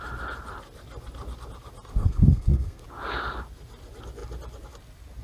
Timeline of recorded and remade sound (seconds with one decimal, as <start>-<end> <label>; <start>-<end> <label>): 0.0-2.0 recorded; 2.0-2.8 remade; 2.8-5.2 recorded